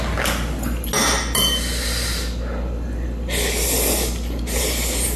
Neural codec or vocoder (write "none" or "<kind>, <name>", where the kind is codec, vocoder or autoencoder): none